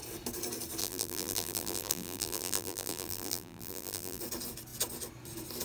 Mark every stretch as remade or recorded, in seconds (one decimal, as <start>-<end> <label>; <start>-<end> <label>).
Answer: 0.0-0.8 recorded; 0.8-4.2 remade; 4.2-5.6 recorded